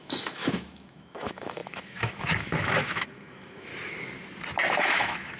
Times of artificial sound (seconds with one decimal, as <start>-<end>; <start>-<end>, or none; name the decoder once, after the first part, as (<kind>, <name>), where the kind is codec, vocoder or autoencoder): 0.0-3.7 (autoencoder, DAC-VAE); 4.8-5.4